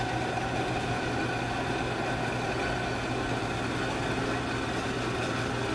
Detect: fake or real real